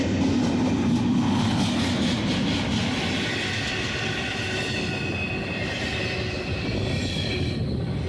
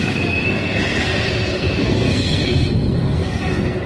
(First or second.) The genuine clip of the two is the first